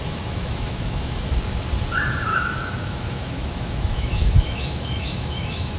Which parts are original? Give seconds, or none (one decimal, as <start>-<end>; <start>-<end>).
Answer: 1.2-2.3